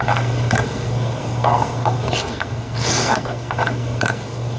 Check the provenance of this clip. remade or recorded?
remade